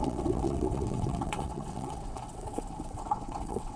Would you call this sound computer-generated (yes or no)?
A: yes